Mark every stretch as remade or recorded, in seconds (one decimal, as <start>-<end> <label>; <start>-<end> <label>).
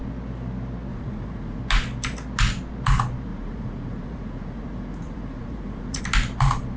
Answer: 0.0-0.9 recorded; 0.9-1.6 remade; 1.6-3.3 recorded; 3.3-6.0 remade; 6.0-6.8 recorded